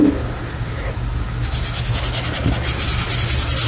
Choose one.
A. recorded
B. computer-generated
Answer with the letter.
A